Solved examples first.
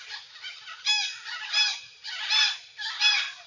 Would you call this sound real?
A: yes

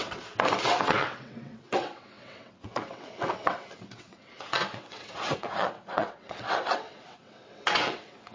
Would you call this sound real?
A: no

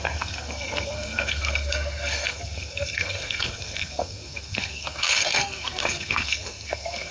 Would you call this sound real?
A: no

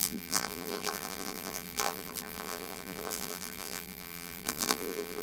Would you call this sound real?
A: no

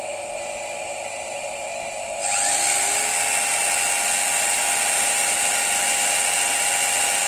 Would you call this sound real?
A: yes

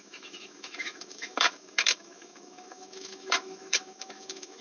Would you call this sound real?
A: no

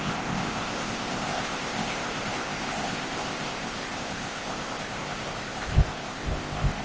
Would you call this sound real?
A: no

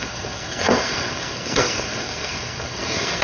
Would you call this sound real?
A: no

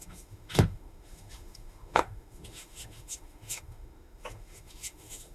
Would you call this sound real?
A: no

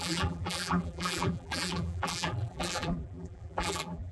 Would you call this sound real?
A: no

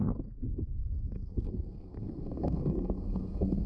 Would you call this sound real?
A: no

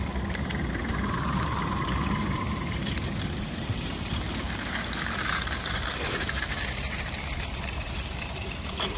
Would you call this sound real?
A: no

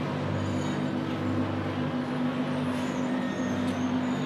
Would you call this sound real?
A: yes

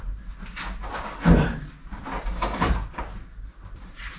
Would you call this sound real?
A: yes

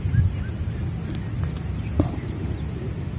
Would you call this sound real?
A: yes